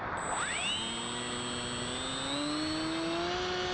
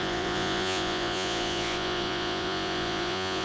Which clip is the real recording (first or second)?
first